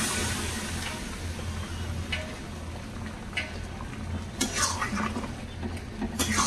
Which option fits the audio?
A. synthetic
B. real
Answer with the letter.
B